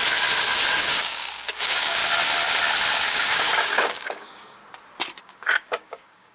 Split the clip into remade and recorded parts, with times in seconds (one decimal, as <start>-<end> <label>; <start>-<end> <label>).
0.0-0.7 recorded; 0.7-2.0 remade; 2.0-3.0 recorded; 3.0-4.6 remade; 4.6-5.2 recorded; 5.2-6.3 remade